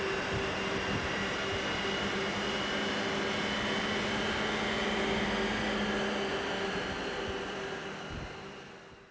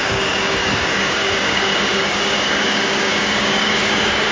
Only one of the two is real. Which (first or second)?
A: first